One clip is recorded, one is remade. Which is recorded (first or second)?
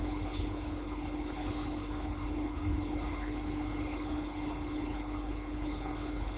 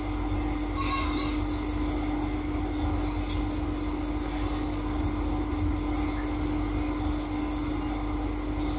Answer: second